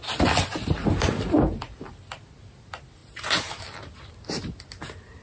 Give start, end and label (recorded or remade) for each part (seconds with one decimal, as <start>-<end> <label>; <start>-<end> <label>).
0.0-5.2 recorded